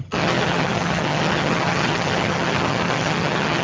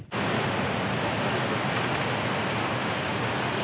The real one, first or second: second